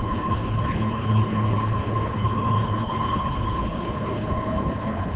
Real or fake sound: fake